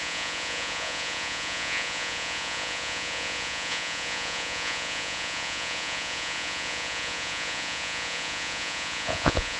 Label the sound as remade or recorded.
remade